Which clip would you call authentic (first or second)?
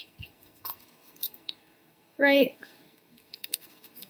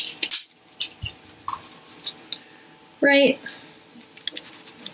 second